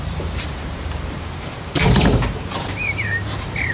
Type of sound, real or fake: fake